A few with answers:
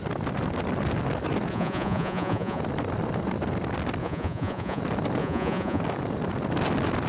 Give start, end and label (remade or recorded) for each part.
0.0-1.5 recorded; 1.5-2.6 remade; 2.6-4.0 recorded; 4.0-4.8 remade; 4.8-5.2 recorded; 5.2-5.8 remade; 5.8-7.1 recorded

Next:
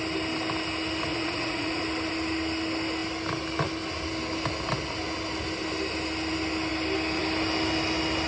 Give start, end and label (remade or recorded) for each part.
0.0-1.1 recorded; 1.1-1.8 remade; 1.8-8.3 recorded

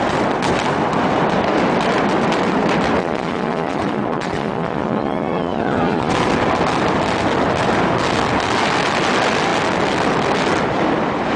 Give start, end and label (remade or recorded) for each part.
0.0-3.0 recorded; 3.0-6.1 remade; 6.1-11.4 recorded

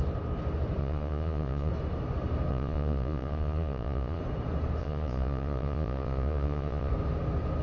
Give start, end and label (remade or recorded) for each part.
0.0-0.8 recorded; 0.8-1.7 remade; 1.7-2.5 recorded; 2.5-4.2 remade; 4.2-4.8 recorded; 4.8-6.9 remade; 6.9-7.6 recorded